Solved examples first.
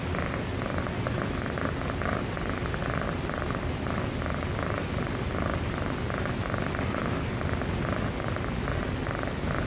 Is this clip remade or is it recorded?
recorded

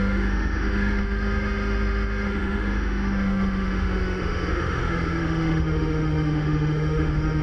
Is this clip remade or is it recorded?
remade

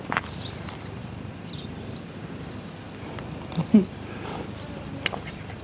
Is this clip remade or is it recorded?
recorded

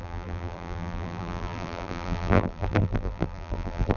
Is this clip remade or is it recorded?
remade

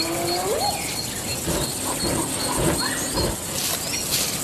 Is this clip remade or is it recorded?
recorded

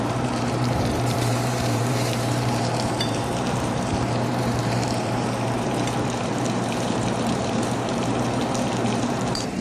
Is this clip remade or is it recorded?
remade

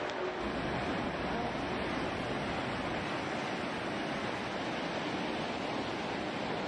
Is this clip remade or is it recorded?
recorded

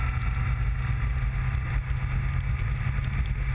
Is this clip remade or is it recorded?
recorded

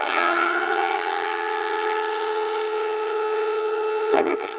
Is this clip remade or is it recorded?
remade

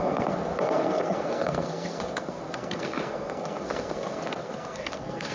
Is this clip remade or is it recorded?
remade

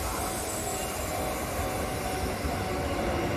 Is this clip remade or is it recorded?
recorded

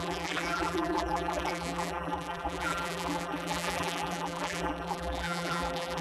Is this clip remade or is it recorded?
remade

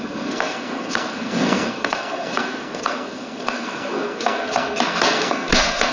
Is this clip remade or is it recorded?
remade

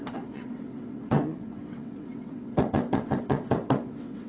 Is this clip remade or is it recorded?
remade